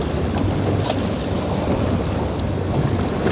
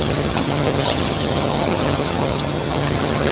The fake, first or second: second